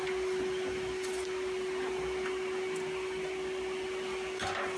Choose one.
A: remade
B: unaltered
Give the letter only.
B